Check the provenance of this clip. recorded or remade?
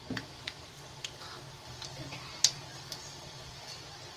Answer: recorded